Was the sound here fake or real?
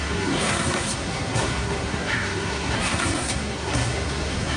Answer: fake